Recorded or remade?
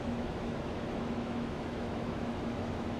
remade